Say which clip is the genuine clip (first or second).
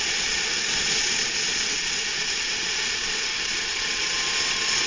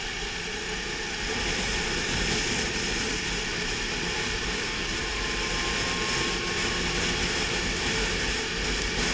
second